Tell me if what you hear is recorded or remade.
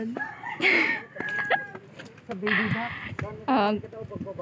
recorded